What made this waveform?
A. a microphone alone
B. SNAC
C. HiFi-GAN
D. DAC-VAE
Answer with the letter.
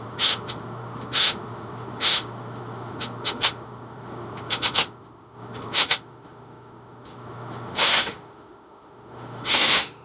D